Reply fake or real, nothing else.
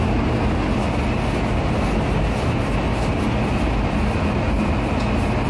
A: real